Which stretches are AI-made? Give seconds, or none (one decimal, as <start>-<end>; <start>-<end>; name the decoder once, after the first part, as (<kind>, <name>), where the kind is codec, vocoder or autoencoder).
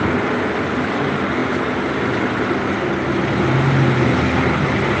none